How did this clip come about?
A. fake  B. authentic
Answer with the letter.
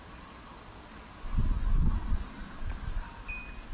B